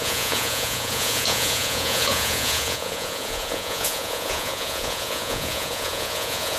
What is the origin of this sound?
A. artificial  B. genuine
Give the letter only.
A